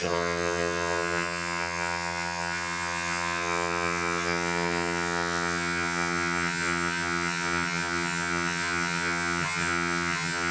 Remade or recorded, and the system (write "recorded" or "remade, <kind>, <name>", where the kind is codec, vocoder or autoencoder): remade, vocoder, HiFi-GAN